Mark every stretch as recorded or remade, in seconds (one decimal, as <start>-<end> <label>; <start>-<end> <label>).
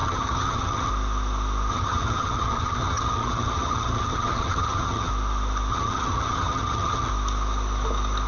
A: 0.0-0.9 remade; 0.9-1.7 recorded; 1.7-5.1 remade; 5.1-5.7 recorded; 5.7-7.1 remade; 7.1-8.3 recorded